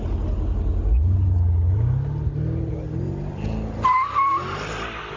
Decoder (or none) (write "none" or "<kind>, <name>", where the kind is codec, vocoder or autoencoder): none